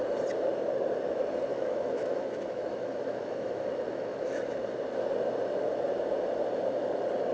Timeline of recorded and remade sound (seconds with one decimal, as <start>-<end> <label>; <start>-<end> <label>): 0.0-1.5 recorded; 1.5-4.5 remade; 4.5-7.3 recorded